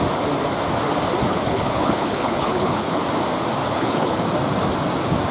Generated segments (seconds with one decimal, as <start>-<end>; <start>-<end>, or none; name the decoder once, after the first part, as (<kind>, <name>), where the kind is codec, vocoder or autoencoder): 1.3-3.0 (codec, HILCodec); 3.6-4.2